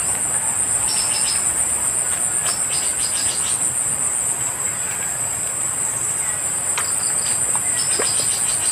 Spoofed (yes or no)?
no